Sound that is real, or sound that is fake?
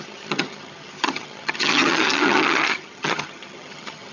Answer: fake